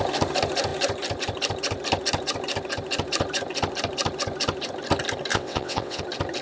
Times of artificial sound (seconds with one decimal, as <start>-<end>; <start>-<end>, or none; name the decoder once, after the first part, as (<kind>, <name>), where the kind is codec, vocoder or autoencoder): 5.3-6.0 (vocoder, WaveNeXt)